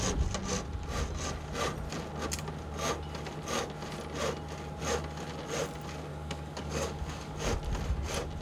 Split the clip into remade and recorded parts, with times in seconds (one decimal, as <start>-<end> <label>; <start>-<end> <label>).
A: 0.0-6.1 recorded; 6.1-7.5 remade; 7.5-8.4 recorded